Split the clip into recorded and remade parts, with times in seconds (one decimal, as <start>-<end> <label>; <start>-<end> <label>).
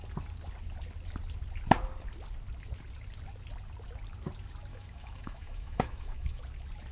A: 0.0-4.7 recorded; 4.7-6.4 remade; 6.4-6.9 recorded